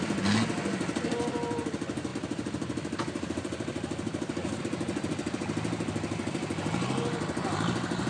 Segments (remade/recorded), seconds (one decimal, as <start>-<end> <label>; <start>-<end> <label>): 0.0-8.1 recorded